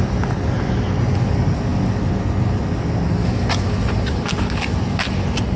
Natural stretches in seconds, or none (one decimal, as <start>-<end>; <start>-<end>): 0.0-5.6